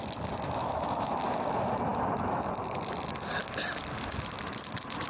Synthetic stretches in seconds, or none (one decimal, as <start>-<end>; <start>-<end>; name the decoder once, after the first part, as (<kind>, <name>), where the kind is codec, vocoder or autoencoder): 0.6-1.1 (autoencoder, DAC-VAE)